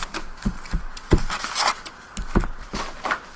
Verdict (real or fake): real